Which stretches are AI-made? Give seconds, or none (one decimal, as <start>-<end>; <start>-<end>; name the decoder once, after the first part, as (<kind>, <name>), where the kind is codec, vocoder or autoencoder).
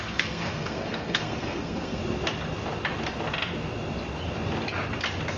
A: 0.0-2.0 (codec, SNAC)